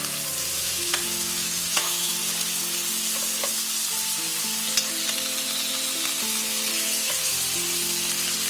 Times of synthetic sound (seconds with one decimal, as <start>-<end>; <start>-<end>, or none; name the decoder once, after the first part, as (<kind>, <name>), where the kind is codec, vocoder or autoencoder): 0.5-2.2 (autoencoder, DAC-VAE); 6.7-7.3